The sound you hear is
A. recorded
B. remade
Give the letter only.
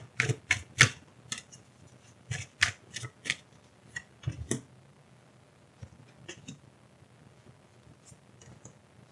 A